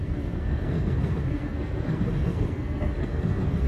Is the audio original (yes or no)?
no